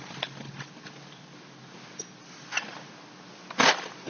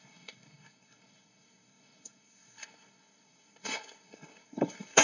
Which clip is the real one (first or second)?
first